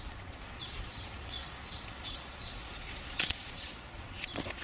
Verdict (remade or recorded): remade